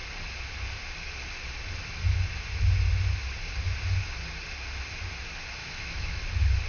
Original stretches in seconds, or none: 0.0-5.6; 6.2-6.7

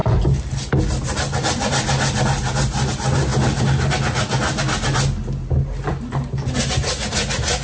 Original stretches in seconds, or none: 0.0-7.6

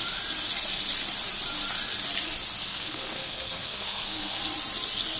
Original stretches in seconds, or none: 0.0-2.7; 4.4-5.2